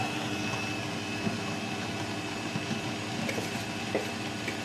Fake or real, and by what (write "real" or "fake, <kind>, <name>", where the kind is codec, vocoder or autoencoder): real